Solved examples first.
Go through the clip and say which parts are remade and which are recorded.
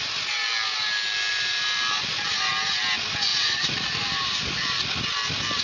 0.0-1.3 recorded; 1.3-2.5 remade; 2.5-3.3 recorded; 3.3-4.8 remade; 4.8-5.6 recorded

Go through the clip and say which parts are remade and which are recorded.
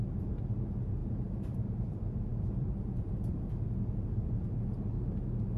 0.0-1.0 recorded; 1.0-1.8 remade; 1.8-2.3 recorded; 2.3-3.7 remade; 3.7-5.6 recorded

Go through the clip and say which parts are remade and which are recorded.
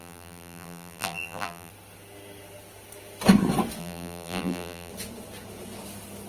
0.0-1.7 remade; 1.7-3.8 recorded; 3.8-4.9 remade; 4.9-6.3 recorded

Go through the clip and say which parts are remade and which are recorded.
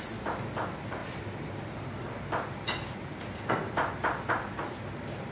0.0-1.0 recorded; 1.0-2.5 remade; 2.5-3.1 recorded; 3.1-4.7 remade; 4.7-5.3 recorded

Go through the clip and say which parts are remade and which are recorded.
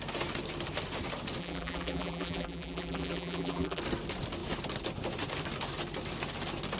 0.0-1.4 recorded; 1.4-3.8 remade; 3.8-6.8 recorded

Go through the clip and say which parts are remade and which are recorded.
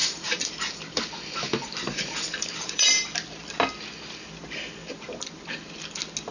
0.0-2.9 remade; 2.9-4.8 recorded; 4.8-5.4 remade; 5.4-6.3 recorded